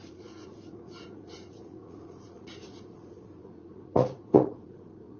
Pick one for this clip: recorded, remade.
remade